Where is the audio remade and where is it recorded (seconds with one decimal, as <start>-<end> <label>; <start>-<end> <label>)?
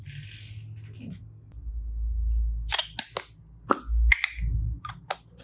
0.0-5.4 recorded